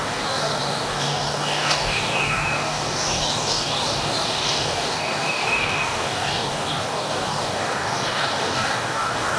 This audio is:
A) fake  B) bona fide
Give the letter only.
A